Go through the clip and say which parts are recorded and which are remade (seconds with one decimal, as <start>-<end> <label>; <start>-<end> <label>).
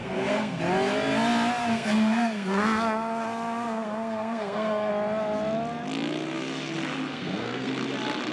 0.0-0.6 remade; 0.6-1.6 recorded; 1.6-4.9 remade; 4.9-7.1 recorded; 7.1-7.7 remade; 7.7-8.3 recorded